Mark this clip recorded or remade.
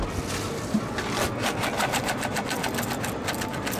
recorded